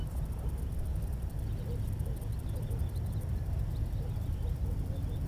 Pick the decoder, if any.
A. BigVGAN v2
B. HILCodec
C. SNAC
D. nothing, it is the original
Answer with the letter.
D